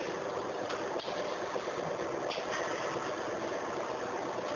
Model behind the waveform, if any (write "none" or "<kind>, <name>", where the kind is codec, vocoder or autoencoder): none